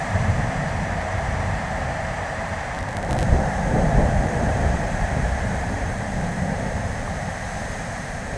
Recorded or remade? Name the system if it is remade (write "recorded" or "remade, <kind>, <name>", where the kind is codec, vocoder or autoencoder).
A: remade, vocoder, BigVGAN v2